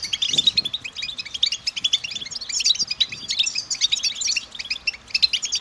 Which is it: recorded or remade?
recorded